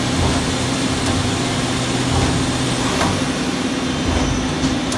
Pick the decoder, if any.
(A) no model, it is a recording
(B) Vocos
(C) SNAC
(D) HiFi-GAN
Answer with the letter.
A